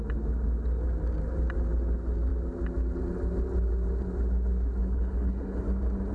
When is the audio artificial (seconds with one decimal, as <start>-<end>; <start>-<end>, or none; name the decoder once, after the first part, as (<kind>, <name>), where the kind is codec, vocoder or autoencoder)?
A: 4.8-5.6 (codec, HILCodec)